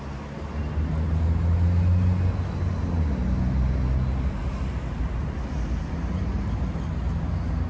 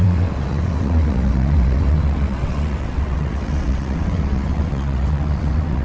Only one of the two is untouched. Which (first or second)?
first